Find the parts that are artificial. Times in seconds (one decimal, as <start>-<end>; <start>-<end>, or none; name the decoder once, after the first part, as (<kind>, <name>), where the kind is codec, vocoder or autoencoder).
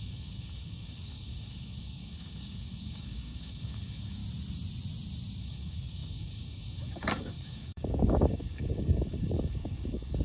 0.0-4.2 (codec, DAC); 5.4-10.2